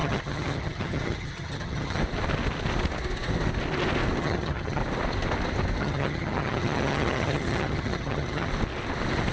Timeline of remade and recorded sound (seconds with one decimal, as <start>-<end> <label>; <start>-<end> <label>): 0.0-2.0 remade; 2.0-4.2 recorded; 4.2-4.8 remade; 4.8-5.8 recorded; 5.8-8.5 remade; 8.5-9.3 recorded